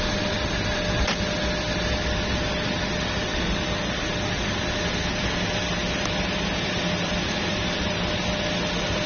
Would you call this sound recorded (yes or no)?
yes